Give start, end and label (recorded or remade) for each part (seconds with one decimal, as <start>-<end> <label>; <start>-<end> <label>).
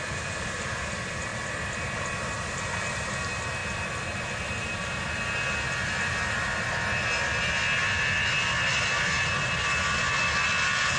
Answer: 0.0-11.0 recorded